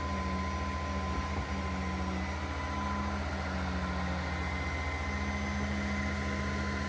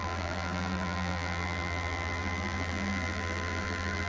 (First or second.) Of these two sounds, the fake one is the second